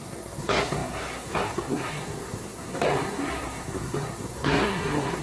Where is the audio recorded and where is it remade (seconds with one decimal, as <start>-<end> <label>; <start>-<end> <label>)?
0.0-5.2 remade